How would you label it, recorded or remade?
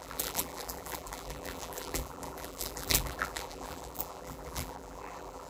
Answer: remade